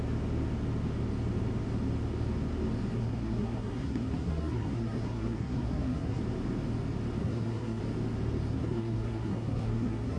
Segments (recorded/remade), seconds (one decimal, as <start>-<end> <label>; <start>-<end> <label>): 0.0-2.9 recorded; 2.9-6.2 remade; 6.2-7.2 recorded; 7.2-7.8 remade; 7.8-8.5 recorded; 8.5-10.2 remade